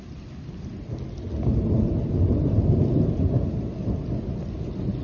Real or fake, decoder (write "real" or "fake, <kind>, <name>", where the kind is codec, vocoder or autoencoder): real